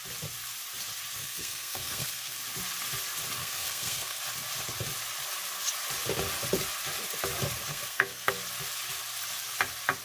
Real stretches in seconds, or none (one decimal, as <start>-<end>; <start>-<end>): 0.0-1.2; 2.4-3.4; 4.2-7.7; 8.3-10.0